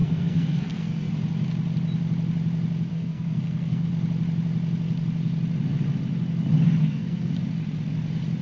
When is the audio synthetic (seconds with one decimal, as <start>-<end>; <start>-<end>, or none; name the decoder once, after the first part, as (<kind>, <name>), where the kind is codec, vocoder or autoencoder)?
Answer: 0.0-1.1 (codec, SNAC); 2.9-3.9; 6.8-7.3